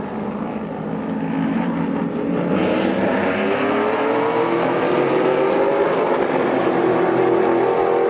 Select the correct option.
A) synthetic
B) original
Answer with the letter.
B